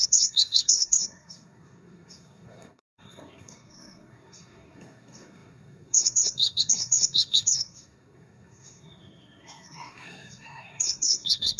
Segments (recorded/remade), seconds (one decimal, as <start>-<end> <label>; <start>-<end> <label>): 0.0-11.6 remade